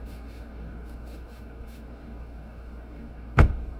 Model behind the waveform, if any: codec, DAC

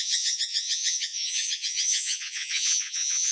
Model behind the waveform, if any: vocoder, Vocos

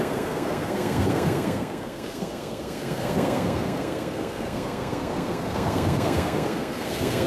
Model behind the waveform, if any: codec, SNAC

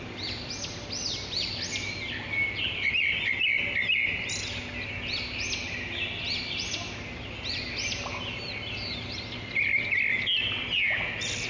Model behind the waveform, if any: none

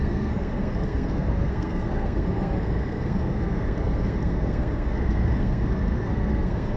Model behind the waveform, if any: codec, SNAC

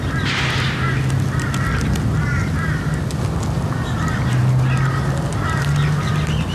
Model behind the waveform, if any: none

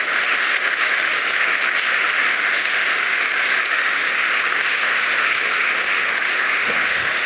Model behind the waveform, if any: autoencoder, DAC-VAE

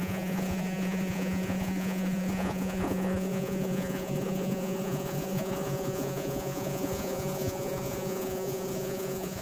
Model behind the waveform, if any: vocoder, Vocos